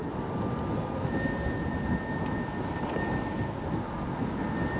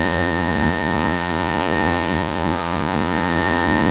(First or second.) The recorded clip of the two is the first